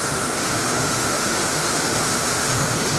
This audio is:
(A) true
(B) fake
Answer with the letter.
B